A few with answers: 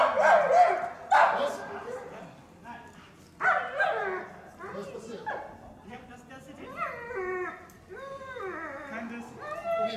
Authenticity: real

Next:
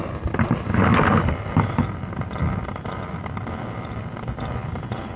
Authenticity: real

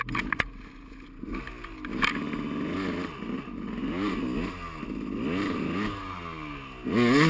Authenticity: real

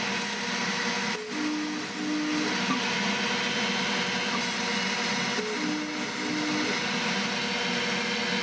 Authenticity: real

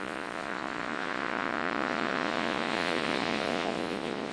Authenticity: fake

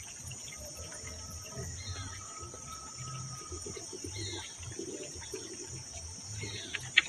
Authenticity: fake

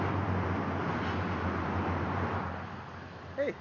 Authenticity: real